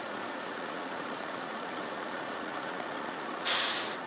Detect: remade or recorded remade